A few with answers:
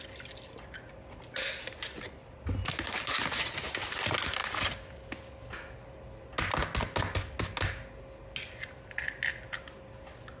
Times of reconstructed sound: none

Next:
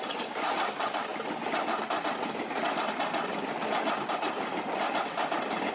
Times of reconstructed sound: none

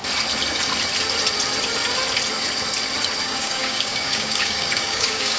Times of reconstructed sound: 3.2-5.4

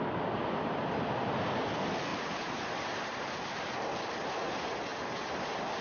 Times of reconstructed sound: 2.1-3.4; 4.9-5.8

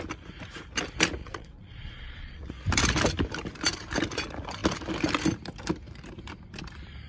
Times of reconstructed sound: 1.2-2.5

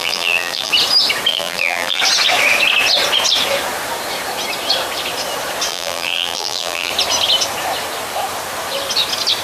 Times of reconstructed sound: 0.0-0.7; 1.3-2.0; 5.7-6.9

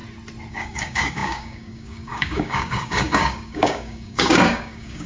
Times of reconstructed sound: 0.5-5.1

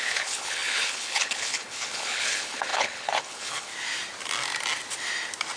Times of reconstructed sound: 0.0-3.7